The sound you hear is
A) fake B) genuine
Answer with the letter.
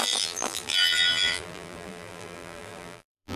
A